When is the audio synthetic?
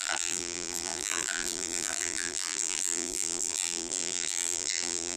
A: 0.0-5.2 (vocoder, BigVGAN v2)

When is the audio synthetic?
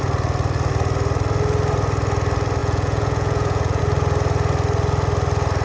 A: 2.6-3.8 (vocoder, Vocos)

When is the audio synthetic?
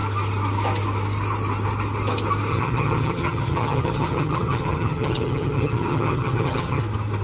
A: 2.5-6.8 (vocoder, HiFi-GAN)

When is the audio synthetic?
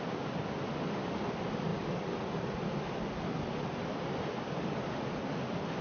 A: none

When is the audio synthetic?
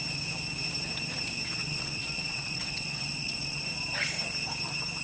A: 1.6-3.6 (vocoder, WaveNeXt)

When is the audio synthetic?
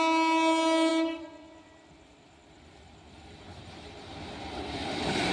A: none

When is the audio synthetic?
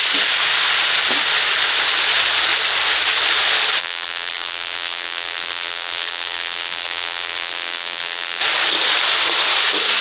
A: 3.8-8.4 (vocoder, BigVGAN v2)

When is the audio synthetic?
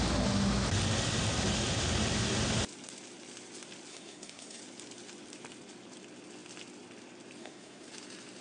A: 3.9-4.6 (codec, SNAC); 7.4-7.9